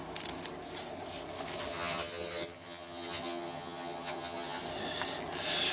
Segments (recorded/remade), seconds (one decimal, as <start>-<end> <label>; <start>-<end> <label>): 0.0-1.7 recorded; 1.7-4.6 remade; 4.6-5.7 recorded